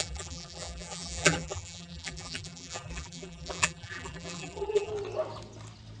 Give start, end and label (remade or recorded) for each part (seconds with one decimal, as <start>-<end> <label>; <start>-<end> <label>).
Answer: 0.0-4.9 remade; 4.9-6.0 recorded